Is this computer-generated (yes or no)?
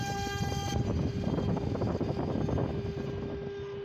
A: no